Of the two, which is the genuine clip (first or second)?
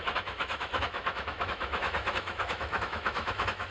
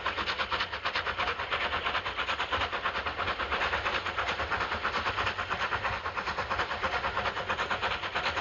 second